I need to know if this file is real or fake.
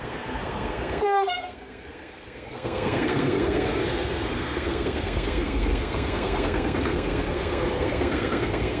fake